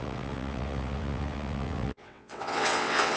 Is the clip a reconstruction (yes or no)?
yes